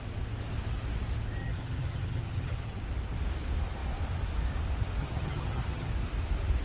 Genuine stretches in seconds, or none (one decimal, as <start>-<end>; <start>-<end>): 0.0-1.4; 2.8-5.0; 5.9-6.6